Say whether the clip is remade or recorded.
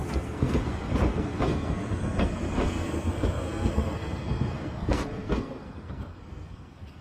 remade